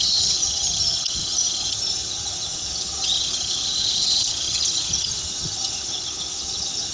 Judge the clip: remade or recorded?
remade